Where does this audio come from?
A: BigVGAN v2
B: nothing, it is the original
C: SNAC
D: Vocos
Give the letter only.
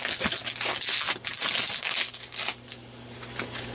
B